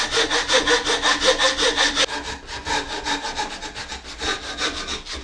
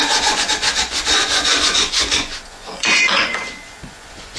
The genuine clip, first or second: first